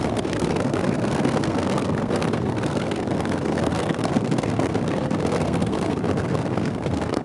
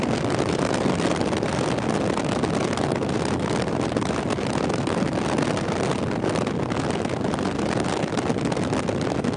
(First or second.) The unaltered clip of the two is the second